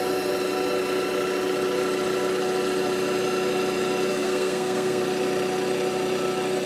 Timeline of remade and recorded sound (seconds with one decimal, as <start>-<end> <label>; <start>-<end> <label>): 0.0-4.1 recorded; 4.1-5.0 remade; 5.0-6.7 recorded